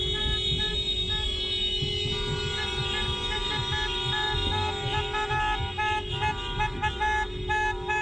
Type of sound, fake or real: real